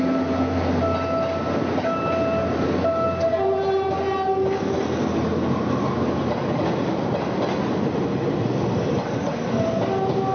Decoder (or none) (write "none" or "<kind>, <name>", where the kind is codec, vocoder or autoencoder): none